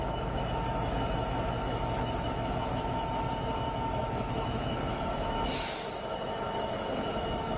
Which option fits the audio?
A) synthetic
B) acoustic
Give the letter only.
A